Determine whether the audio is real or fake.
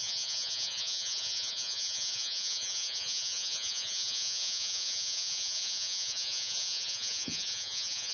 fake